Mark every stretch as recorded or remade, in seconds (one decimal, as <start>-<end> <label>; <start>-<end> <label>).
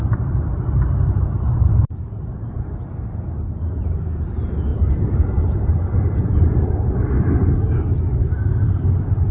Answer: 0.0-2.8 remade; 2.8-4.7 recorded; 4.7-6.7 remade; 6.7-8.2 recorded; 8.2-8.7 remade; 8.7-9.3 recorded